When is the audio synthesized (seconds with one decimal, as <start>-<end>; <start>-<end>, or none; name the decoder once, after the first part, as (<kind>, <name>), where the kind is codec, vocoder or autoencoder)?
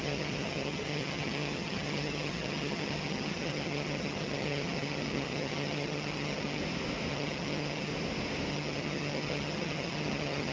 0.0-6.6 (vocoder, HiFi-GAN); 7.1-7.9; 8.5-10.5